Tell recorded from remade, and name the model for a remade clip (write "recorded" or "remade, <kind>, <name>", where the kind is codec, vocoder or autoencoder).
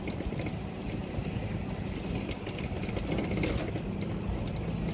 recorded